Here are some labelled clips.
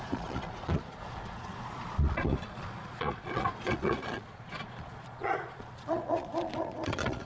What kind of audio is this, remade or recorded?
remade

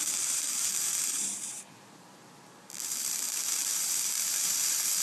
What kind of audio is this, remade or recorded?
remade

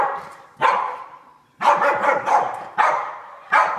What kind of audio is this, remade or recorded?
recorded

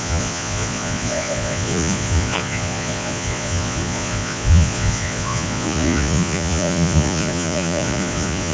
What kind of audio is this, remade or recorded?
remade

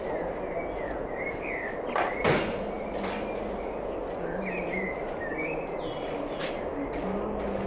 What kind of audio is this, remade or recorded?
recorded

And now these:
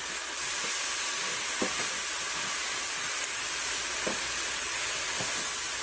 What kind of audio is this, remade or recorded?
recorded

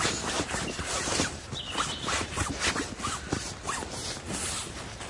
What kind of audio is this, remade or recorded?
recorded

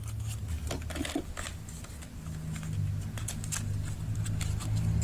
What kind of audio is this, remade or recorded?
recorded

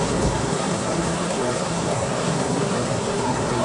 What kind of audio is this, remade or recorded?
remade